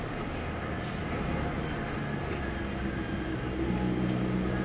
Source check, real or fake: real